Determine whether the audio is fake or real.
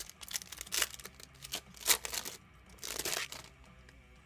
real